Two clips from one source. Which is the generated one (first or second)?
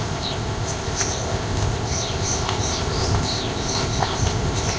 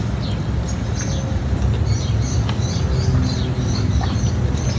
first